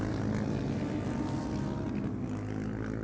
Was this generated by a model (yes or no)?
no